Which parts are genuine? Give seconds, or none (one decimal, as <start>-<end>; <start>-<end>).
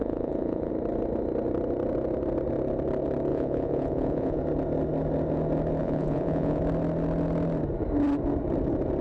0.7-3.3; 4.4-5.8; 6.6-9.0